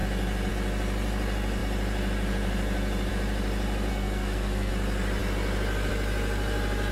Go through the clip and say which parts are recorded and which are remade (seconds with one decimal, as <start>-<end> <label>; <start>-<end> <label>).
0.0-3.9 recorded; 3.9-4.7 remade; 4.7-6.9 recorded